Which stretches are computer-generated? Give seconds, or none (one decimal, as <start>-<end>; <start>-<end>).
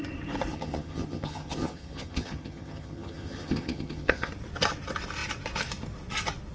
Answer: 0.5-4.3